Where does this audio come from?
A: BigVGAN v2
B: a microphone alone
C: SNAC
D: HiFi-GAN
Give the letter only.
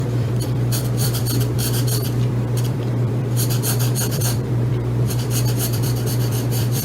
A